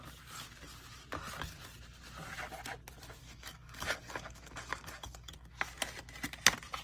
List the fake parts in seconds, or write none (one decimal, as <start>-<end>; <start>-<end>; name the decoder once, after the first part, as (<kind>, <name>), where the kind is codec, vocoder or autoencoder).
3.2-5.3 (codec, DAC)